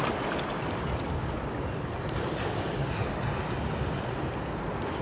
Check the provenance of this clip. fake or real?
real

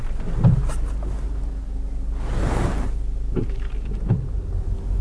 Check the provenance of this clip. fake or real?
real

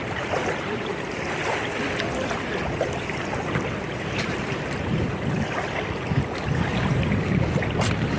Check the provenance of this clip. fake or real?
real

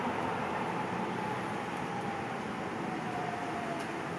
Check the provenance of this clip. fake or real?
real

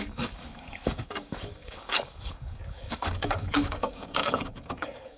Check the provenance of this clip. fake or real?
fake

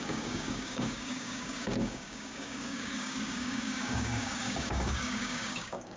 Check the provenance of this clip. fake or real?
fake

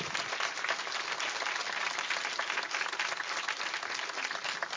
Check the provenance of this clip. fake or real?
real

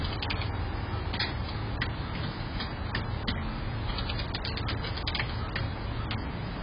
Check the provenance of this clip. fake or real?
real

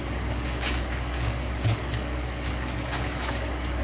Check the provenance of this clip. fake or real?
fake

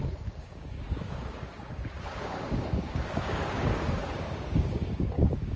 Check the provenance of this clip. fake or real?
fake